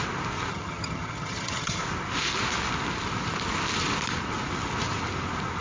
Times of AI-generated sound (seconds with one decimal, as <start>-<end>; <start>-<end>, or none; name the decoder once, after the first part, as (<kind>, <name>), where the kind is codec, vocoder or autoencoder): 0.5-1.8 (vocoder, HiFi-GAN)